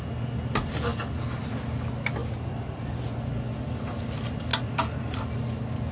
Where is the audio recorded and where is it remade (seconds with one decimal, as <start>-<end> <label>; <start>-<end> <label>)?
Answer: 0.0-5.9 recorded